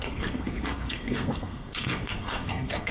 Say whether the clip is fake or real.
fake